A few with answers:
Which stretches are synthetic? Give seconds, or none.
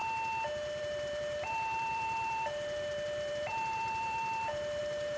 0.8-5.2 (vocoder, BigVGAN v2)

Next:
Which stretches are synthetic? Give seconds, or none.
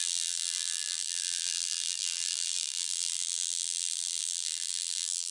0.0-5.3 (vocoder, BigVGAN v2)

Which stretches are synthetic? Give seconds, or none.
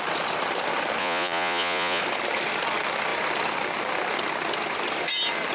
1.0-2.0 (vocoder, Vocos)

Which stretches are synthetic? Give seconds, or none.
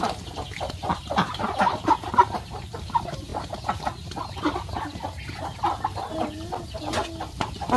none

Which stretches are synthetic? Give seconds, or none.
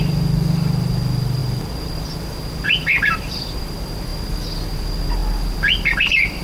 0.0-6.4 (vocoder, BigVGAN v2)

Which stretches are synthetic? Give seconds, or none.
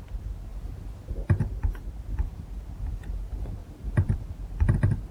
1.5-2.0 (vocoder, BigVGAN v2); 3.6-4.2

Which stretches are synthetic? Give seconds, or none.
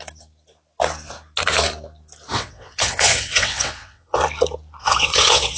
2.3-4.2 (vocoder, WaveNeXt); 4.8-5.6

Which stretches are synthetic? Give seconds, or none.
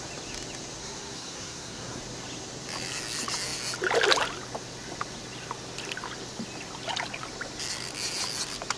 0.8-2.0 (codec, SNAC)